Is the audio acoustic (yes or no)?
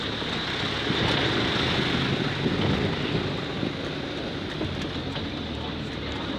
yes